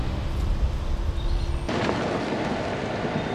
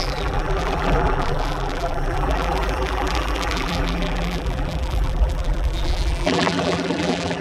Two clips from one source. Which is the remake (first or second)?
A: second